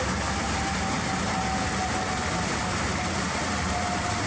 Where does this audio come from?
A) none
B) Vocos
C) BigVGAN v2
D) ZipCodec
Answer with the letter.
A